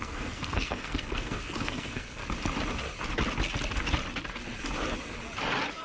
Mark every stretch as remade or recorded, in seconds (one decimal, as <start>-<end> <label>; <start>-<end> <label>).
0.0-2.2 remade; 2.2-5.8 recorded